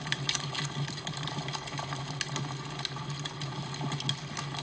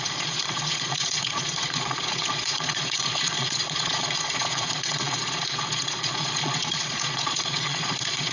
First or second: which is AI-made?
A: second